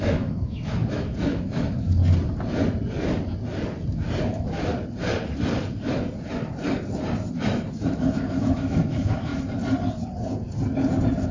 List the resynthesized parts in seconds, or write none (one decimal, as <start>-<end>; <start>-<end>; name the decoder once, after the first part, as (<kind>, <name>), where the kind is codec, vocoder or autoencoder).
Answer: 0.0-2.0 (autoencoder, DAC-VAE); 4.2-4.7; 7.7-9.3